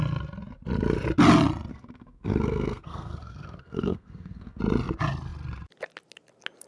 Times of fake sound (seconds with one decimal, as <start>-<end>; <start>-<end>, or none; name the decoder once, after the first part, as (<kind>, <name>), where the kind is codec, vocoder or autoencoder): 1.7-4.6 (codec, SNAC)